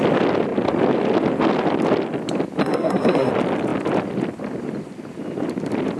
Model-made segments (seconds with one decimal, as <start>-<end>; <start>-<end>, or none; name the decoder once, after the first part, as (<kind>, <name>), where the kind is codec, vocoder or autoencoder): 2.6-3.3 (codec, SNAC)